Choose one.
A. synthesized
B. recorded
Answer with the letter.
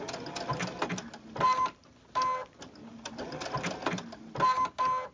B